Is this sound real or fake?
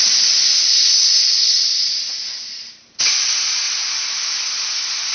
real